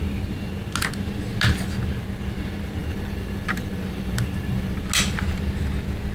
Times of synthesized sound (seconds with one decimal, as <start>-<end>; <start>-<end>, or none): 2.8-4.8